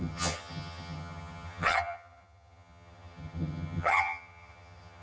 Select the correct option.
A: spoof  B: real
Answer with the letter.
A